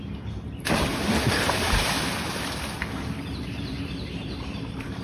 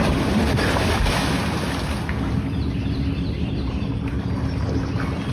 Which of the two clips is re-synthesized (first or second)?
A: first